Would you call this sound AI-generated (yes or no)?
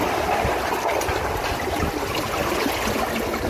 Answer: no